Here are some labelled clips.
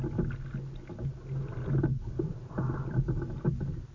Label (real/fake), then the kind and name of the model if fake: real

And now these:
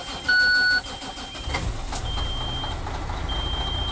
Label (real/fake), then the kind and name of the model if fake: real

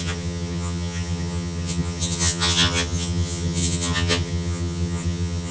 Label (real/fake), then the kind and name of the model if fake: fake, vocoder, HiFi-GAN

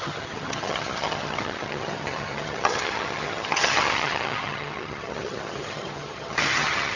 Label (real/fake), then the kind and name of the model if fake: fake, vocoder, HiFi-GAN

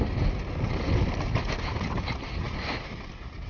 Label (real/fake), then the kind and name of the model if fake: real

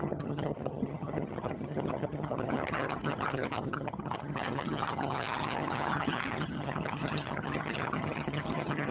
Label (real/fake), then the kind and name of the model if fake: fake, vocoder, HiFi-GAN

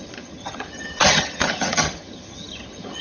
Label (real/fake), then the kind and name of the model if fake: fake, vocoder, HiFi-GAN